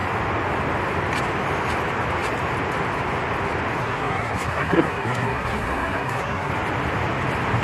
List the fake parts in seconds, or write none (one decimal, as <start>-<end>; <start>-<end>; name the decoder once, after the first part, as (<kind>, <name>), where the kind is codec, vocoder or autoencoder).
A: 3.8-6.5 (codec, SNAC)